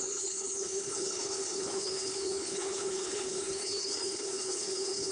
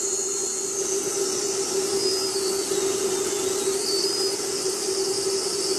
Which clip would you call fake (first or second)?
first